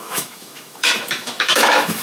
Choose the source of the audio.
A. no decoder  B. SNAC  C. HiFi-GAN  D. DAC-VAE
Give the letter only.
D